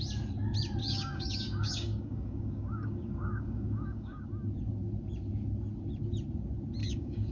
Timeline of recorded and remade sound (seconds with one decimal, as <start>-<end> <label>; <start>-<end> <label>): 0.0-0.8 recorded; 0.8-4.2 remade; 4.2-6.8 recorded; 6.8-7.3 remade